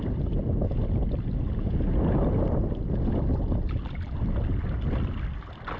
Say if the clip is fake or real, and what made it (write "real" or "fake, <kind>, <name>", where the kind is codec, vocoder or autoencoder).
real